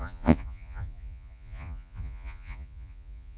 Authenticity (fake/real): fake